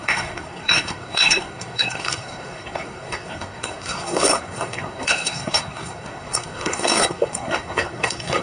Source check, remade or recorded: remade